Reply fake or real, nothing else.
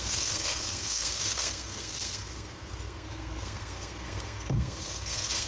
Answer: fake